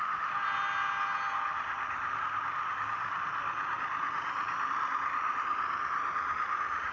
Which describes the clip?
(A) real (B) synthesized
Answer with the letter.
A